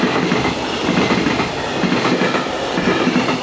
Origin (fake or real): real